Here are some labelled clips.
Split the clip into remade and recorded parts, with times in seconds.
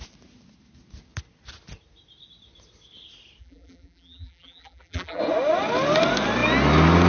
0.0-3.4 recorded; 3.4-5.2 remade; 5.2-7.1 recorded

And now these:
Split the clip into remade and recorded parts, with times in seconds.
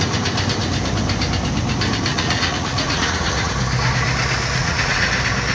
0.0-2.1 recorded; 2.1-3.5 remade; 3.5-4.6 recorded; 4.6-5.1 remade; 5.1-5.5 recorded